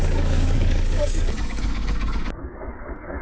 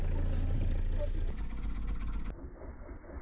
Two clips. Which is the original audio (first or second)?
second